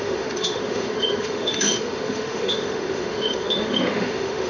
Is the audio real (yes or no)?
no